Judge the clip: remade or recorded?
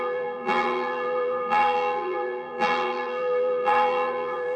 remade